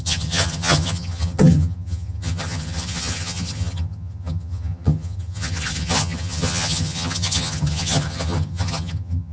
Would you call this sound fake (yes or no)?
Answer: yes